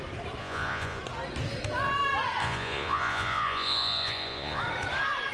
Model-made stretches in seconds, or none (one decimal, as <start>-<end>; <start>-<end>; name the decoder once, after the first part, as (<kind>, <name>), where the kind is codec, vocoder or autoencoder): 0.4-1.0 (vocoder, Vocos); 2.4-4.6

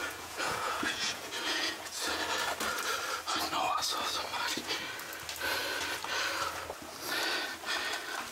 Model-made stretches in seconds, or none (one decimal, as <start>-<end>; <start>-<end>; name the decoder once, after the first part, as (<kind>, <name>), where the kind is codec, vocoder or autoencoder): 0.0-2.2 (vocoder, Vocos)

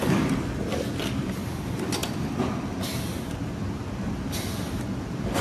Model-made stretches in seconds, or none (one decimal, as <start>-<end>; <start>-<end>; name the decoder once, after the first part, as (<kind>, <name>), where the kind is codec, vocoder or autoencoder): none